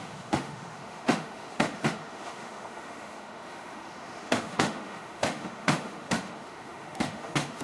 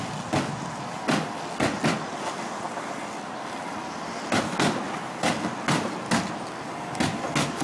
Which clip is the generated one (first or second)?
first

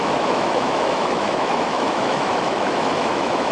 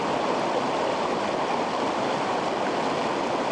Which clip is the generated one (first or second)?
first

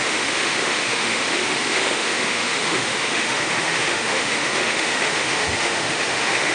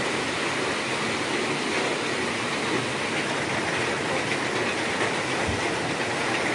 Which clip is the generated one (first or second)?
first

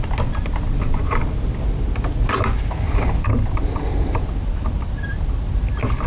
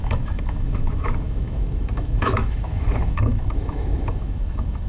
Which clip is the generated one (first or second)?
second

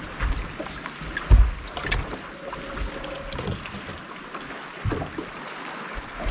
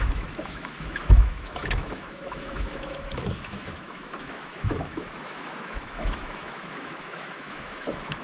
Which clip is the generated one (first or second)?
second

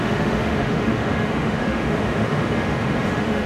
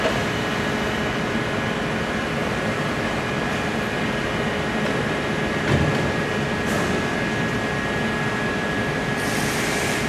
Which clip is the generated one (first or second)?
first